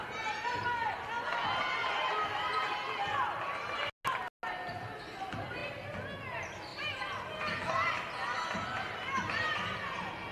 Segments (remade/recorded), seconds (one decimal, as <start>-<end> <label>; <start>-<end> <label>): 0.0-10.3 recorded